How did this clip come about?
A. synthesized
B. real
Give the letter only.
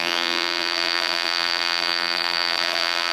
A